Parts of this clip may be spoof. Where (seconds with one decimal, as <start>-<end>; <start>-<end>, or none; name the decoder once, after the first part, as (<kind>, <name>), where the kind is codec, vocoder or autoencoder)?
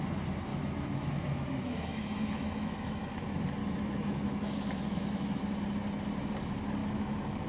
0.5-3.1 (autoencoder, DAC-VAE); 3.6-5.4; 6.8-7.5